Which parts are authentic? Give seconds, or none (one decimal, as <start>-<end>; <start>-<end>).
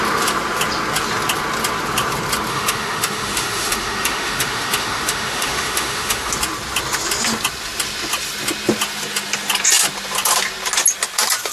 0.0-2.5; 6.3-11.5